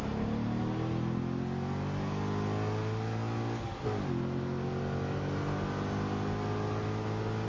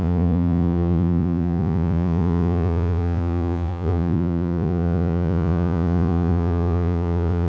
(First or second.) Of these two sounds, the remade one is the second